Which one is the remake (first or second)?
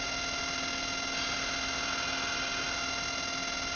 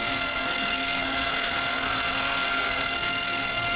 second